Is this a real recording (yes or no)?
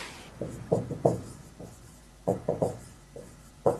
no